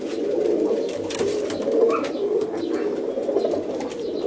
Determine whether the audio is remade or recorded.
recorded